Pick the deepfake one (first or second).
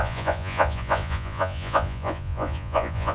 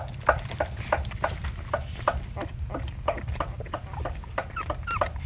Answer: first